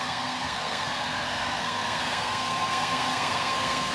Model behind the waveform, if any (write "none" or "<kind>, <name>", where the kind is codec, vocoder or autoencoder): codec, SNAC